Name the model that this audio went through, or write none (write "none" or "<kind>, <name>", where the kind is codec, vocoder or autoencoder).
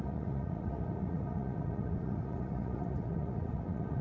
vocoder, Vocos